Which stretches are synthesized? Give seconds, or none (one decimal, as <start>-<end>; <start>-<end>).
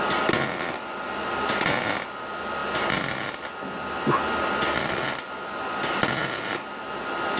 none